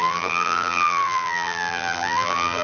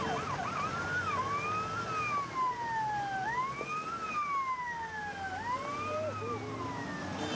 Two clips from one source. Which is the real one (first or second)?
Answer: second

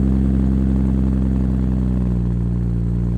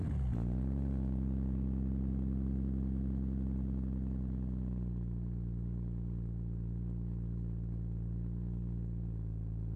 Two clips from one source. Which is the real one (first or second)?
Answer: second